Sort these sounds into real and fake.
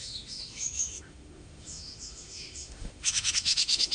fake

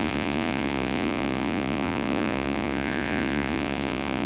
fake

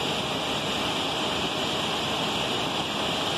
real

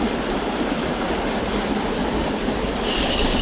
fake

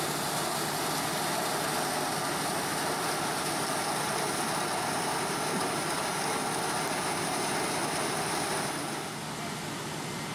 real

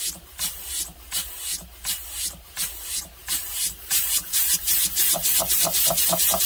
fake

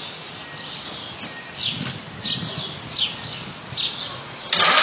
real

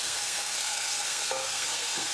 fake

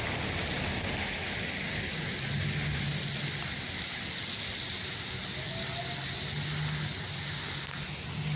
real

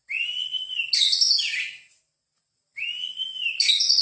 real